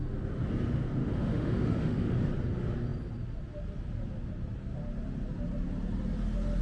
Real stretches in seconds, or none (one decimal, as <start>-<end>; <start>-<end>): 0.0-1.0; 2.3-6.6